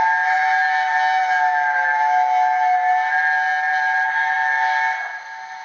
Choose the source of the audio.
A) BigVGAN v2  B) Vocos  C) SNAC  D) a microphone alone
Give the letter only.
D